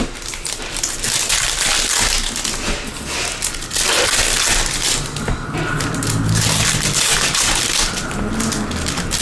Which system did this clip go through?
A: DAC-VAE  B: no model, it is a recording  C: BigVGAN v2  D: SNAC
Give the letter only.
B